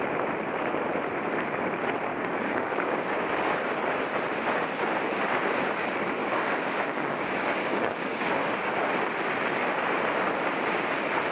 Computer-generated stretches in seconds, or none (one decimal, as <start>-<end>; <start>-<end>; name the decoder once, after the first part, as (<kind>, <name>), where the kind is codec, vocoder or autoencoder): 2.1-3.5 (codec, DAC); 6.2-8.8

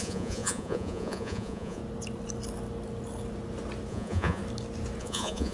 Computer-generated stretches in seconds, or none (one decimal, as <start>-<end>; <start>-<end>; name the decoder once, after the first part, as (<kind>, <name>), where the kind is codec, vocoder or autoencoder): 0.0-1.8 (vocoder, Vocos); 3.9-4.4; 5.0-5.5

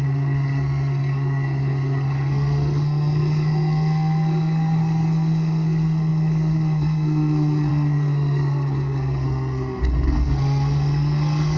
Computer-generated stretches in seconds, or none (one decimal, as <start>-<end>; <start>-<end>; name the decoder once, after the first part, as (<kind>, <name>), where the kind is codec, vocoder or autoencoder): 0.0-11.6 (codec, SNAC)

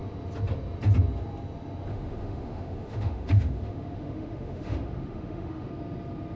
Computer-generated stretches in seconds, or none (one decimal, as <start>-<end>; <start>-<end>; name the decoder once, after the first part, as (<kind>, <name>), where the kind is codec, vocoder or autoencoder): 1.9-5.7 (autoencoder, DAC-VAE)

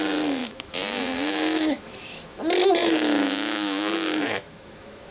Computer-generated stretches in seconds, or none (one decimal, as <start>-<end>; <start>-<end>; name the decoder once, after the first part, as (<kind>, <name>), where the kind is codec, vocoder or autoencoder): 0.4-2.4 (autoencoder, DAC-VAE); 2.8-5.1